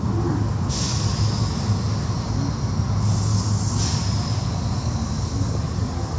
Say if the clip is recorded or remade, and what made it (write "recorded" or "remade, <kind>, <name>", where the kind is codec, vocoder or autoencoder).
recorded